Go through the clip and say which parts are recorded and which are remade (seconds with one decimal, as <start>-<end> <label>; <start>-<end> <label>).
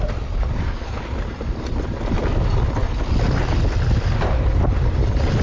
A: 0.0-5.4 recorded